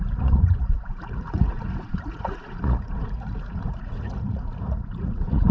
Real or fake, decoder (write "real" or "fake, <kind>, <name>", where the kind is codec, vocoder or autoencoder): fake, vocoder, Vocos